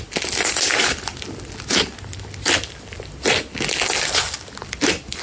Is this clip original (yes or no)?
yes